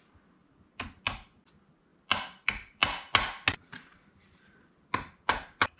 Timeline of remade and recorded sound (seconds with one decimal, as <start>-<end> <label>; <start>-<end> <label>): 0.0-5.8 recorded